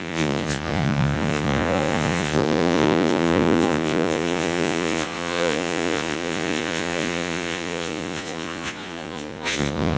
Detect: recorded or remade remade